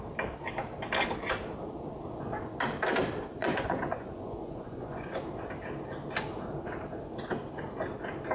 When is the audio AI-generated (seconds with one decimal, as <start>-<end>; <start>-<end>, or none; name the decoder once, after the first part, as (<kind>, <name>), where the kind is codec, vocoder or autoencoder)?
3.4-5.2 (vocoder, Vocos)